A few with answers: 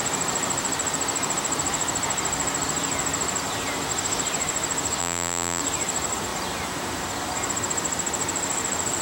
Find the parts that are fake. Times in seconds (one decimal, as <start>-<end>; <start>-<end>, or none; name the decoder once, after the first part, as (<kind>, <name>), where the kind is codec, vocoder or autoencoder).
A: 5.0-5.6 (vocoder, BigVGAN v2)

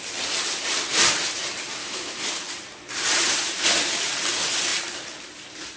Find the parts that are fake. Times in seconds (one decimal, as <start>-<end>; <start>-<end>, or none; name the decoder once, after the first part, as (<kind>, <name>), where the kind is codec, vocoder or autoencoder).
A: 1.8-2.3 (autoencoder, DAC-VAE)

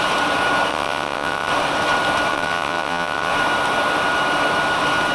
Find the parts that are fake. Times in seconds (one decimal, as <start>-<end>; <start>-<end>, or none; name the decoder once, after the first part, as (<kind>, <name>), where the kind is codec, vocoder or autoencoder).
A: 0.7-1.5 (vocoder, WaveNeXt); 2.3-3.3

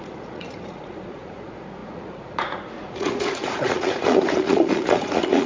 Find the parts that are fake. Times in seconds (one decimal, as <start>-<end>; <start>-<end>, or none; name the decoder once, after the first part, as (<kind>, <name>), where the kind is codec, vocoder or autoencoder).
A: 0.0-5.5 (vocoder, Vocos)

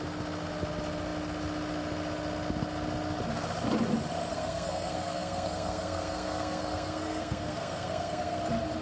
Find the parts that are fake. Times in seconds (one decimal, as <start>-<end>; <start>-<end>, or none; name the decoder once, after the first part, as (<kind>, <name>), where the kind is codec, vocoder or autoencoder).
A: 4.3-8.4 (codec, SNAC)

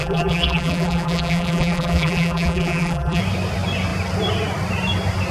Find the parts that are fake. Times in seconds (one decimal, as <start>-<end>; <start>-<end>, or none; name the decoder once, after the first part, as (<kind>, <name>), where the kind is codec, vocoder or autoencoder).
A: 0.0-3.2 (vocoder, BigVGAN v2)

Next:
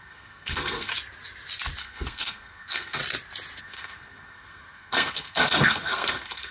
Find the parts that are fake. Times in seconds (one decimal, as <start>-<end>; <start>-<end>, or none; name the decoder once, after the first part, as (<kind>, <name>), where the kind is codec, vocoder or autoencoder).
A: 0.0-0.9 (codec, SNAC); 1.8-3.0; 3.6-6.5

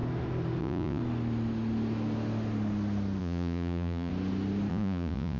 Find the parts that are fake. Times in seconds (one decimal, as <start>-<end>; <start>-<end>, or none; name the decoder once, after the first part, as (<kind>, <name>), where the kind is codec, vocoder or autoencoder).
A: 0.6-1.0 (vocoder, Vocos); 3.2-4.1; 4.7-5.4